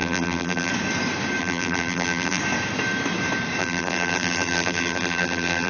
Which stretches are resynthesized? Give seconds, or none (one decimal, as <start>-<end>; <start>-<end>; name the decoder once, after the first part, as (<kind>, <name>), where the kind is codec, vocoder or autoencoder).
0.0-0.7 (vocoder, BigVGAN v2); 1.4-2.4; 3.6-5.7